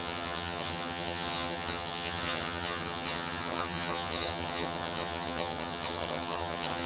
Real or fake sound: fake